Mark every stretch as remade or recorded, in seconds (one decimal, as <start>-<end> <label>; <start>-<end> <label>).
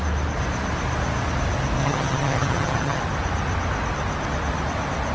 0.0-1.8 recorded; 1.8-3.0 remade; 3.0-5.1 recorded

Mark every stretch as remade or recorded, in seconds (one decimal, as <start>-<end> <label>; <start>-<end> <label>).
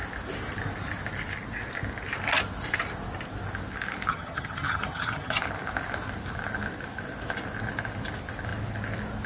0.0-4.1 recorded; 4.1-5.4 remade; 5.4-9.3 recorded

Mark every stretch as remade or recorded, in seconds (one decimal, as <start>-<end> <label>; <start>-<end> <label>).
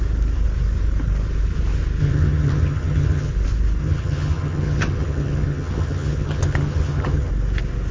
0.0-2.0 recorded; 2.0-3.3 remade; 3.3-3.8 recorded; 3.8-7.3 remade; 7.3-7.9 recorded